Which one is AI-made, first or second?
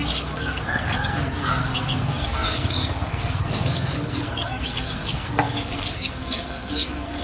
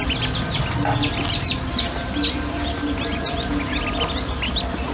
first